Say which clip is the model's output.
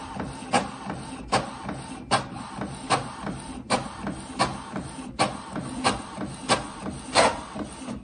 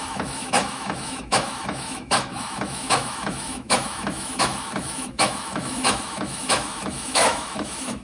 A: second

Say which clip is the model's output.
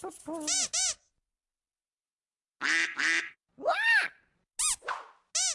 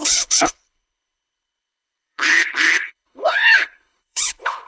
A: second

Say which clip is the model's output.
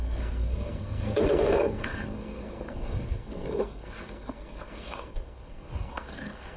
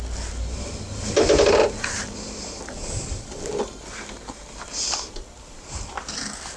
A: first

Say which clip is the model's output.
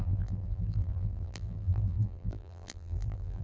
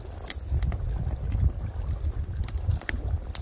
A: first